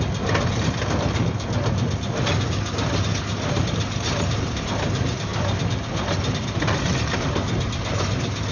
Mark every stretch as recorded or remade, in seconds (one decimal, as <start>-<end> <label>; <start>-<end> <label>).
0.0-5.3 recorded; 5.3-7.1 remade; 7.1-8.5 recorded